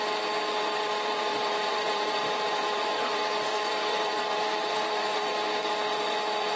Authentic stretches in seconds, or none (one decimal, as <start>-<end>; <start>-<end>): 0.0-1.3; 5.3-6.6